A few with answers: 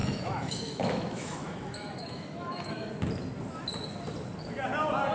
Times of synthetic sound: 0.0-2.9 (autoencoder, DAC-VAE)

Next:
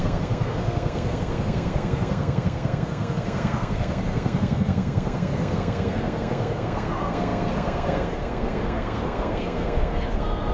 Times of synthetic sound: 0.0-10.5 (codec, SNAC)

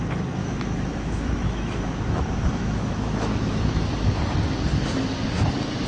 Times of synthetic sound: 0.4-3.9 (autoencoder, DAC-VAE)

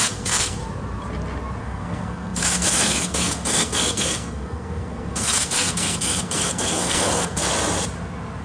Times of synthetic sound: 0.0-0.6 (codec, SNAC); 1.6-7.4

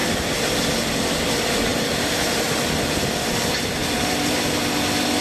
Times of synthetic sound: 1.7-2.4 (vocoder, BigVGAN v2); 3.8-4.6